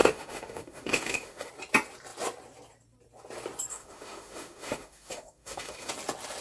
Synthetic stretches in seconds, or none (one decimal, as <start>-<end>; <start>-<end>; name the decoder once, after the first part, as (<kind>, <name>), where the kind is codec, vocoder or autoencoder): 0.0-1.5 (autoencoder, DAC-VAE); 3.7-5.9